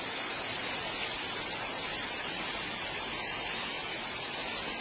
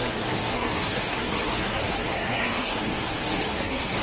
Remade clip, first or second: second